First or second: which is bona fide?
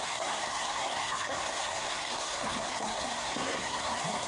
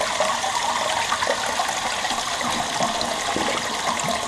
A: second